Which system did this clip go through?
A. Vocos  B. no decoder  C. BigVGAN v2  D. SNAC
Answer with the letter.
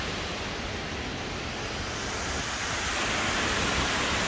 B